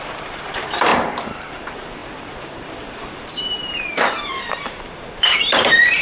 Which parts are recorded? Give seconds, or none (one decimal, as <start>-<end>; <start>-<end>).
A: 0.9-1.5